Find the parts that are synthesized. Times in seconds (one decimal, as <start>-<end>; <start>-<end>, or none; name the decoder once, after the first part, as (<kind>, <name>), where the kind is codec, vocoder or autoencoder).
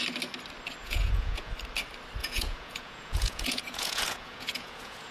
0.8-1.5 (vocoder, Vocos); 2.2-5.1